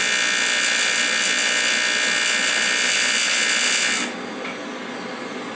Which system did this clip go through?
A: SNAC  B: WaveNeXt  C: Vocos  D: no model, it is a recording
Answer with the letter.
D